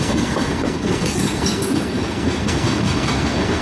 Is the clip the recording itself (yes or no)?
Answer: no